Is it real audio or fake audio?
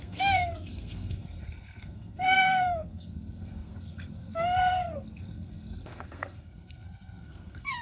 fake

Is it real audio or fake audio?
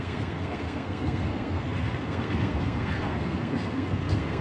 fake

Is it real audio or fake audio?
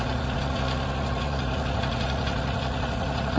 fake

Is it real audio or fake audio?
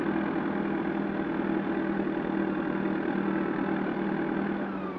real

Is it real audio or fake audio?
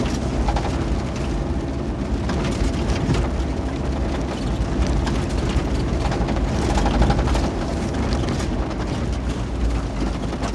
real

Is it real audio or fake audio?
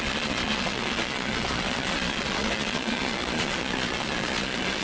fake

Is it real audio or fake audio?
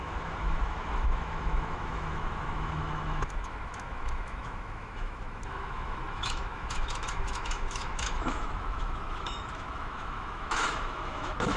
fake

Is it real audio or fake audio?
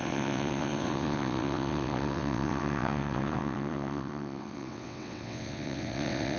fake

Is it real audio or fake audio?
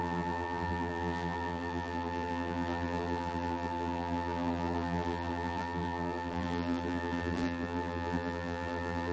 fake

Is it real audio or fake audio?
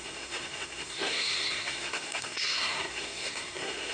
fake